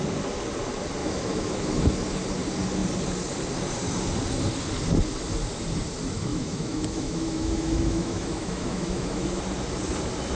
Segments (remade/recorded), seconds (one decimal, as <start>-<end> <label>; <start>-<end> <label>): 0.0-1.0 recorded; 1.0-1.7 remade; 1.7-6.3 recorded; 6.3-9.4 remade; 9.4-10.3 recorded